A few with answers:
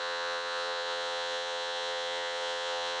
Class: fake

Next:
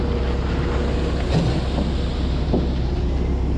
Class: real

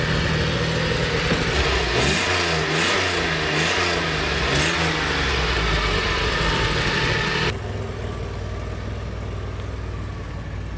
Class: real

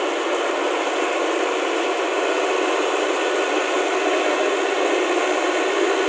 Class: real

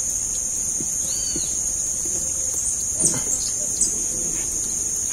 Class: real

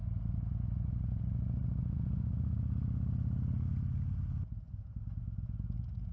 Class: fake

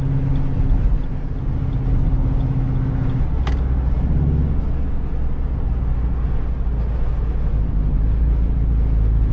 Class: real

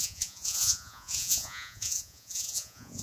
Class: fake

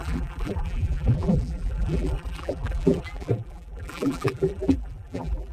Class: fake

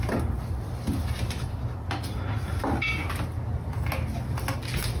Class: real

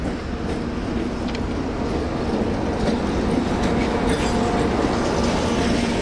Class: real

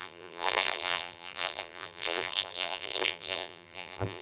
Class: fake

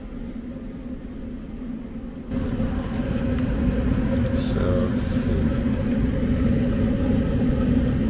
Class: real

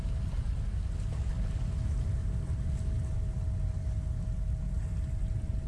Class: real